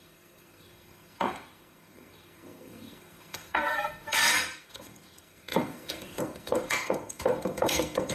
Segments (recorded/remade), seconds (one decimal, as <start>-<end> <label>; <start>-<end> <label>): 0.0-8.1 remade